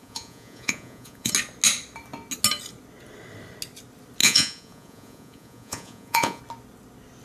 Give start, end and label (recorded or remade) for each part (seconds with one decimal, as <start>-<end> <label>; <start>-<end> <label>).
0.0-1.3 remade; 1.3-4.2 recorded; 4.2-6.4 remade; 6.4-7.2 recorded